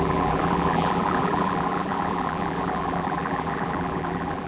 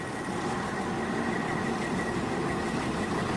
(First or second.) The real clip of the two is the second